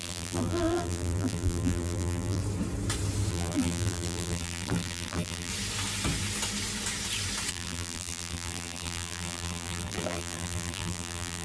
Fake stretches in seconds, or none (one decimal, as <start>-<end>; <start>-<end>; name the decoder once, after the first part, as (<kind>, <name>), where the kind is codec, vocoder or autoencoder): 0.0-2.4 (vocoder, BigVGAN v2); 3.3-5.5; 7.5-11.4